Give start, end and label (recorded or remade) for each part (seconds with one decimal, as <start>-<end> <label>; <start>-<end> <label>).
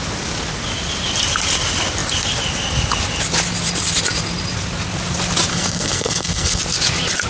0.0-5.5 recorded; 5.5-6.6 remade; 6.6-7.3 recorded